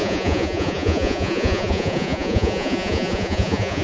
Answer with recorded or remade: remade